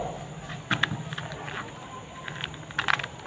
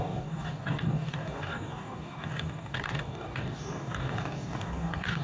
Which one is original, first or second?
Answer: first